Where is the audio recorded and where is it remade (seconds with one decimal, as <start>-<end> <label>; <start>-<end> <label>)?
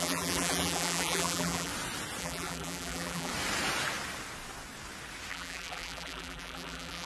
0.0-1.7 remade; 1.7-2.2 recorded; 2.2-3.3 remade; 3.3-5.3 recorded; 5.3-7.1 remade